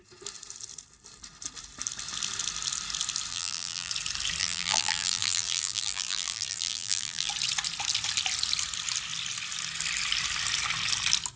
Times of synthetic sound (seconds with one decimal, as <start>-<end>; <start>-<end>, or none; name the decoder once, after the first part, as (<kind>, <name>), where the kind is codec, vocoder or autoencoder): 3.3-3.9 (vocoder, BigVGAN v2); 4.4-7.3